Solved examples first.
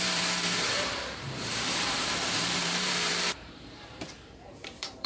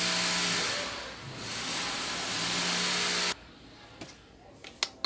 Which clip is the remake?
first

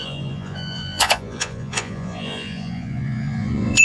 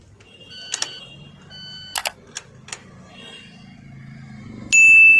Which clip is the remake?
first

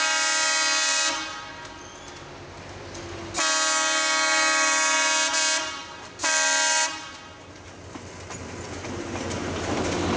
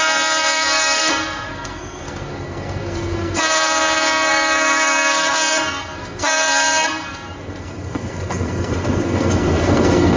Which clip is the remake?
second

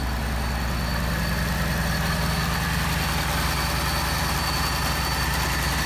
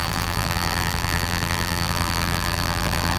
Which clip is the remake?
second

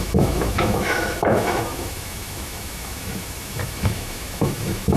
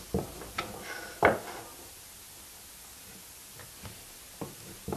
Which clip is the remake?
first